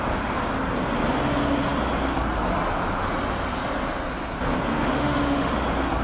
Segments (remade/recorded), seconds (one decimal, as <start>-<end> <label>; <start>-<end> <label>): 0.0-4.7 recorded; 4.7-5.5 remade; 5.5-6.0 recorded